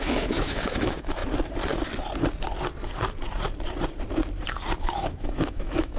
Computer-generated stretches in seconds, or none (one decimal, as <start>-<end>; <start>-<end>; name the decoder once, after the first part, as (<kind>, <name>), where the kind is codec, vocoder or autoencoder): 0.0-1.2 (autoencoder, DAC-VAE); 4.8-6.0